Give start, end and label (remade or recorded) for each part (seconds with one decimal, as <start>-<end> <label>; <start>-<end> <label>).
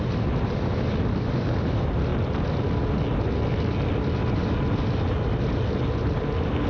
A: 0.0-6.7 recorded